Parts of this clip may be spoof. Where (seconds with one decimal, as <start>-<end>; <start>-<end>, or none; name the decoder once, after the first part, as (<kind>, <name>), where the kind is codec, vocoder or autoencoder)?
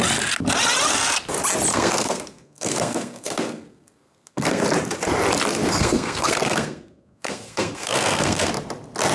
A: 1.7-4.6 (codec, SNAC); 5.7-8.5